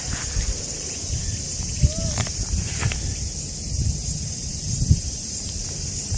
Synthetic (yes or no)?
yes